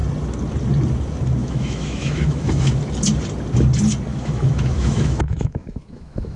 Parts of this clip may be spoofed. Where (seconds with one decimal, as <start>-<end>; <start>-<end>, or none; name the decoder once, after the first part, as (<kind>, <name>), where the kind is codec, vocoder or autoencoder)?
1.4-2.7 (autoencoder, DAC-VAE); 4.1-6.4